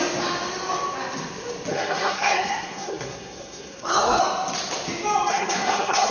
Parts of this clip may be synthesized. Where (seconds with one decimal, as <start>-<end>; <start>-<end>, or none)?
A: 1.7-4.2; 5.3-6.1